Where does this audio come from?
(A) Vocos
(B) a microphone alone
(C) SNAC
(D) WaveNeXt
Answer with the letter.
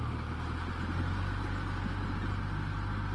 B